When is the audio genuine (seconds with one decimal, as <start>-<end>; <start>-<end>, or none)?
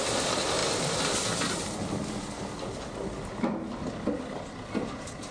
0.0-5.3